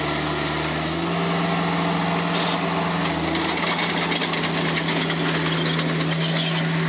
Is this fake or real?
real